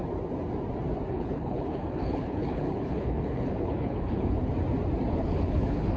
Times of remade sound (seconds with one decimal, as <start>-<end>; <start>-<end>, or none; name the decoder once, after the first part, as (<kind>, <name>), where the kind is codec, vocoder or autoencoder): 1.1-4.5 (codec, HILCodec); 5.1-6.0